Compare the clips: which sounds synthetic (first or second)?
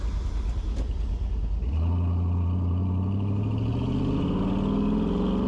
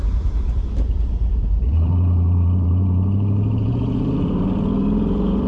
second